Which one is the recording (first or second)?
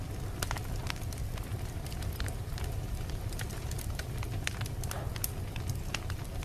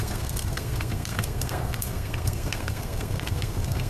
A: first